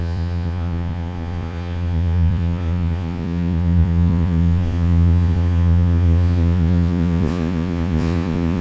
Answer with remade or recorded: remade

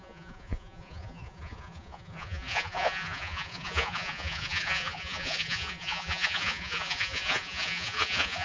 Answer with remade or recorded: remade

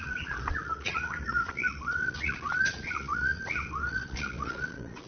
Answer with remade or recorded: remade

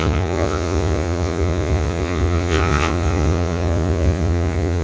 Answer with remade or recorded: remade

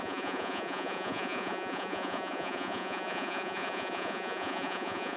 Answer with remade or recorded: remade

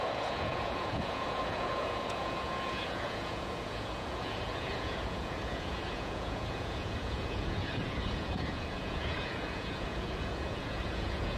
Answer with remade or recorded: remade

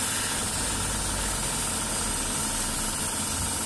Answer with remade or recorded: recorded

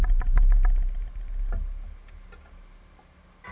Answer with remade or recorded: recorded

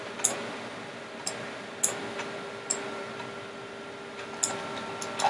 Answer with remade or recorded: recorded